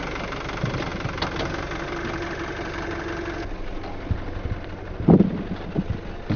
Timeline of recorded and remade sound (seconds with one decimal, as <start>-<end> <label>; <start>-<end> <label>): 0.0-6.4 recorded